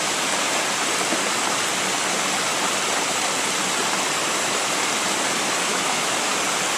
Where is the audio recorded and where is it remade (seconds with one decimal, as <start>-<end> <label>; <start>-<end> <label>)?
0.0-5.7 recorded; 5.7-6.3 remade; 6.3-6.8 recorded